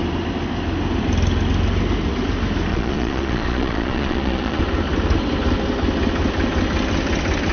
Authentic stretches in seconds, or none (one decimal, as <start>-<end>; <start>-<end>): 0.0-2.7; 4.6-7.5

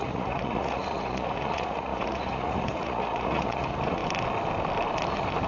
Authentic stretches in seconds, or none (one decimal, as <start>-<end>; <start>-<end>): 4.0-5.5

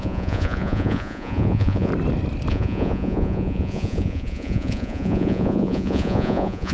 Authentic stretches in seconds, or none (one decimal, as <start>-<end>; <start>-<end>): 1.9-2.5

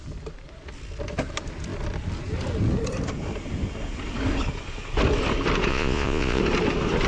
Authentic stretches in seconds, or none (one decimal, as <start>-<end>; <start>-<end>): 0.0-5.7; 6.4-7.1